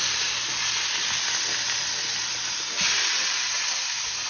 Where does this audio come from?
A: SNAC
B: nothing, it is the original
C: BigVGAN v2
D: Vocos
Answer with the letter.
B